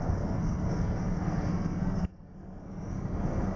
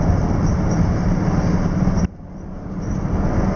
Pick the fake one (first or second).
first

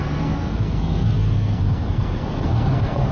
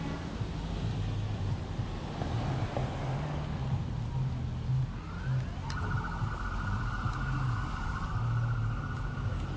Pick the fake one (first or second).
first